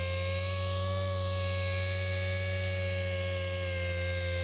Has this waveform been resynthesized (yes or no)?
no